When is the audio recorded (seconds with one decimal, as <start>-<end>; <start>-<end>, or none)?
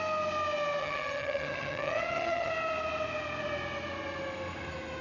0.0-0.8; 2.5-5.0